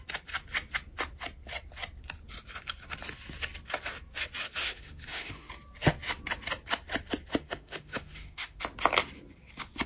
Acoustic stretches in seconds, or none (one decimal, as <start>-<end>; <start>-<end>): 0.0-4.6; 5.5-7.3; 8.6-9.9